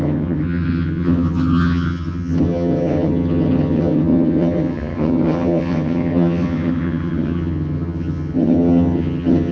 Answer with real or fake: fake